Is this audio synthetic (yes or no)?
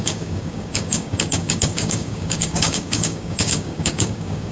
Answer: yes